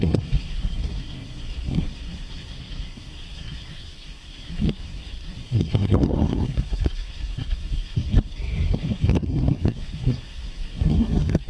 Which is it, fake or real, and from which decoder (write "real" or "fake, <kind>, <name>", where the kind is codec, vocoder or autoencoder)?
fake, codec, SNAC